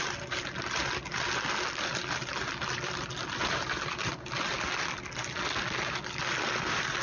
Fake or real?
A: real